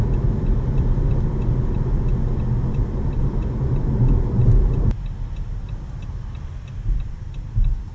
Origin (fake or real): real